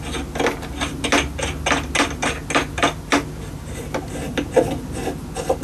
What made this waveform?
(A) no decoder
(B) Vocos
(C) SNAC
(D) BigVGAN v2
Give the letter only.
A